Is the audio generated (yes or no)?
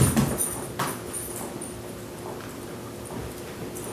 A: yes